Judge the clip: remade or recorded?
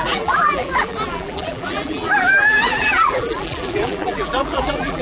remade